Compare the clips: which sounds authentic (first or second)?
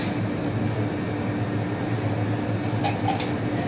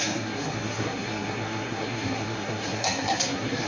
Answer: first